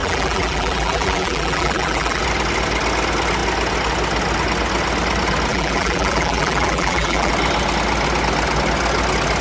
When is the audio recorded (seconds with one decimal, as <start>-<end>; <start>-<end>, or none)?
2.2-5.5; 7.3-9.4